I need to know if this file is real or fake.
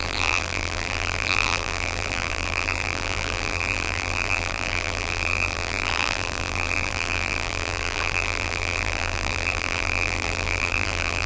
fake